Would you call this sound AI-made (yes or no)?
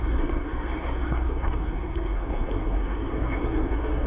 yes